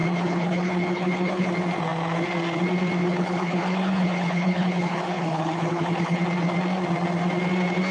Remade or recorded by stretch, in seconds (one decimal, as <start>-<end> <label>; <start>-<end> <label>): 0.0-1.5 remade; 1.5-3.0 recorded; 3.0-6.2 remade; 6.2-7.9 recorded